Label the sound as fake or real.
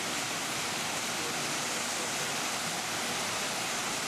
real